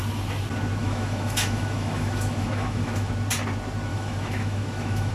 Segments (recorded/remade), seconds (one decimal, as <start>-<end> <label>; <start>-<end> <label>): 0.0-0.8 recorded; 0.8-3.1 remade; 3.1-3.9 recorded; 3.9-5.1 remade